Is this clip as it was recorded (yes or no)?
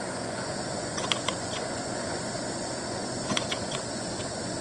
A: no